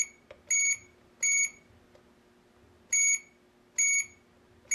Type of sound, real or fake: real